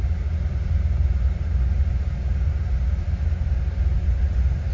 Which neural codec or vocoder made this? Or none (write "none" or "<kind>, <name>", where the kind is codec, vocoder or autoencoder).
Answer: none